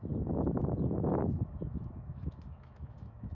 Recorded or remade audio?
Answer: remade